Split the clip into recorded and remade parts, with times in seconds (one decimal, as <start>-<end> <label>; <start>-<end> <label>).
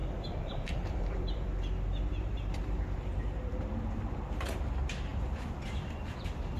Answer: 0.0-4.0 remade; 4.0-5.1 recorded; 5.1-6.6 remade